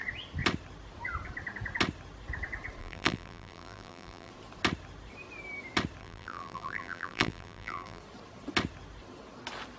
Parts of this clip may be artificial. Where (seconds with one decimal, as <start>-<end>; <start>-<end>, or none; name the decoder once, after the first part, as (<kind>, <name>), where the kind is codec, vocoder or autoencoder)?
2.8-4.3 (vocoder, BigVGAN v2); 6.0-8.0